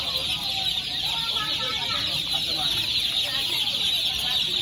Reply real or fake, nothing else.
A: real